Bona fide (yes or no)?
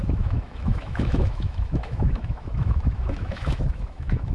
no